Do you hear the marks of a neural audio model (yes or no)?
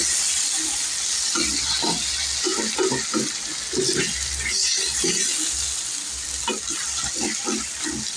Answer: no